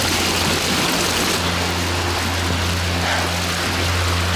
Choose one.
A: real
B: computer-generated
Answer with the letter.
A